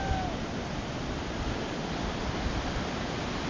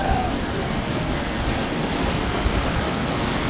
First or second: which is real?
first